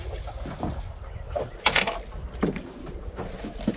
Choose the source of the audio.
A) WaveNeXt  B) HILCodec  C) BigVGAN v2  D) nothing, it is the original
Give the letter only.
D